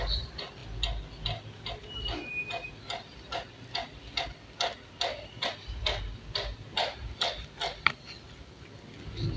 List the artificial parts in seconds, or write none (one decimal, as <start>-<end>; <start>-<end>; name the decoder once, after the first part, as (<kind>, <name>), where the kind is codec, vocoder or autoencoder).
none